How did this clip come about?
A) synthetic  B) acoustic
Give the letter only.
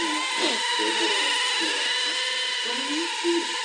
B